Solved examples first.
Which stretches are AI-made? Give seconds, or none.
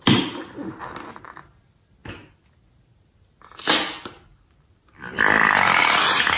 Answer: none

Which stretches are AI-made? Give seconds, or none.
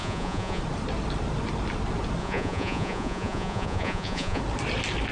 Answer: 0.0-0.6 (vocoder, Vocos); 2.2-4.4